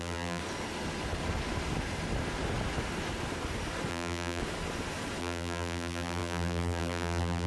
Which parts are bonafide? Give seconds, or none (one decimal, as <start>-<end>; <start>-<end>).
0.4-3.9; 4.4-5.2